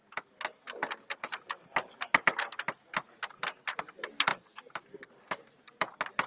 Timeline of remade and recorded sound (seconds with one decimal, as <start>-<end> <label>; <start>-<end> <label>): 0.0-6.3 recorded